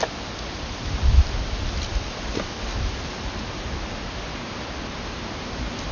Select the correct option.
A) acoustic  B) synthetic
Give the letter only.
A